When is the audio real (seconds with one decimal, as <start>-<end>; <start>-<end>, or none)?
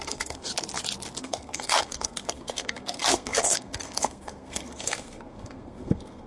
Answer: 0.5-1.2